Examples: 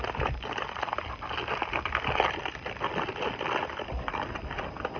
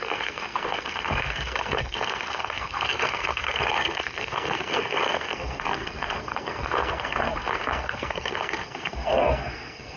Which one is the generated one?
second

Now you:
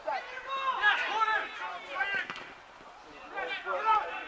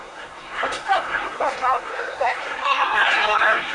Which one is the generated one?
second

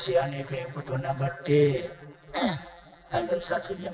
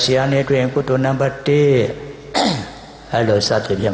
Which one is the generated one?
first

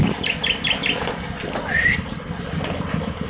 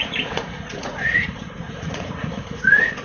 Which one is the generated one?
second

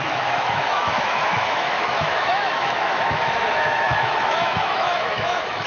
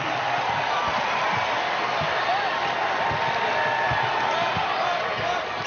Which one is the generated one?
first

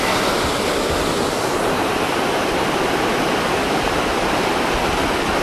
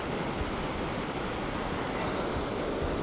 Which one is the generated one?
first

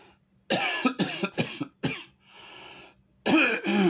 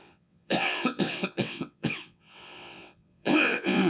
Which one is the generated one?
second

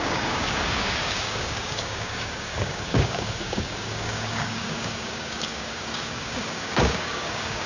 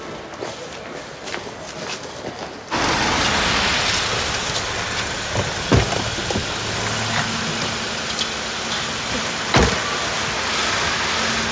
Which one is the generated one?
first